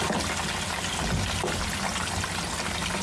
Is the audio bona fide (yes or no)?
yes